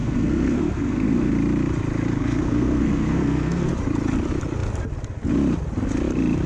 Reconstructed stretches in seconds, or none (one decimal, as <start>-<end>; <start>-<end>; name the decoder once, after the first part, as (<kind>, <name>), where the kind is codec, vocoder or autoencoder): 0.0-1.3 (codec, SNAC); 2.2-3.7